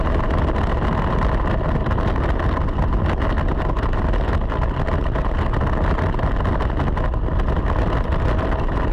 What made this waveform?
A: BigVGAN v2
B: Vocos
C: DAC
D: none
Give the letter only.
D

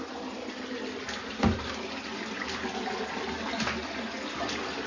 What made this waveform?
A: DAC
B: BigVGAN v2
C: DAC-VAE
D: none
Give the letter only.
D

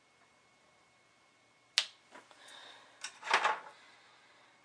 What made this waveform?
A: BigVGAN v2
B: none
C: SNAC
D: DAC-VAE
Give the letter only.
B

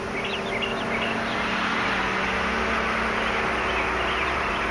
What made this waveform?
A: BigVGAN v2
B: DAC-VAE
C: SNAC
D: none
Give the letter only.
D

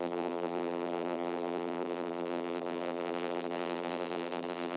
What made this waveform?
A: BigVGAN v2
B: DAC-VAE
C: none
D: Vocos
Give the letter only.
A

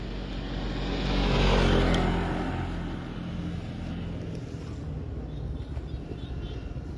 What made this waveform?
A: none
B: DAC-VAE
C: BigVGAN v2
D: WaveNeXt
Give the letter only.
A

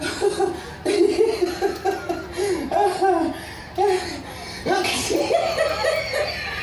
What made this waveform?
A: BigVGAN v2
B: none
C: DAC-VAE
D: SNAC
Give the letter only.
B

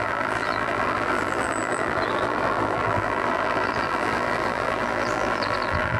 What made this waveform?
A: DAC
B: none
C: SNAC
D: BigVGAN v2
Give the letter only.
D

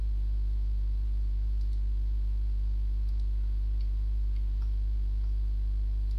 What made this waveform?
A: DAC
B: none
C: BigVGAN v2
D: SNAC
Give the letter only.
C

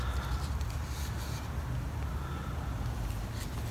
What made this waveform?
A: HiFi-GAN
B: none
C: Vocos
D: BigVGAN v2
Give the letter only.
B